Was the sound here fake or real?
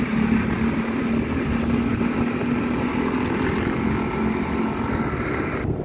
real